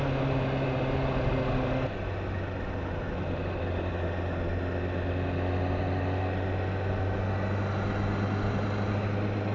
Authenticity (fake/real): real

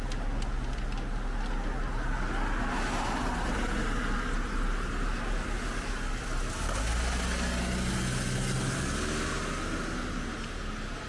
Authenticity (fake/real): real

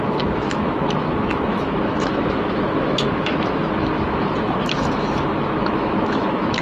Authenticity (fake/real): fake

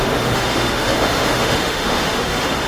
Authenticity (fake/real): fake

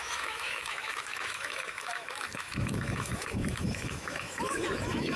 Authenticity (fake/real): fake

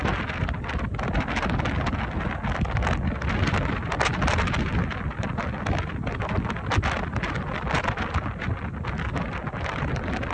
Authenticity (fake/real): real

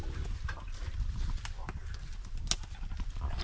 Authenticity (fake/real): real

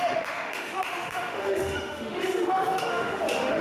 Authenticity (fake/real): fake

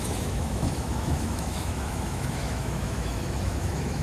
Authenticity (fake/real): fake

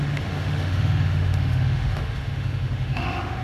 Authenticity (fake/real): fake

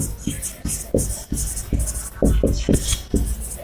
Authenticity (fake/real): real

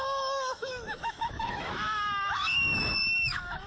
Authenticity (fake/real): fake